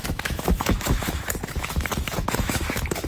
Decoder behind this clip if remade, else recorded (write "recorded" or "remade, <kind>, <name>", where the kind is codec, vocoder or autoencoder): remade, autoencoder, DAC-VAE